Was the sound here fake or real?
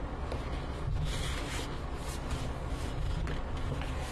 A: real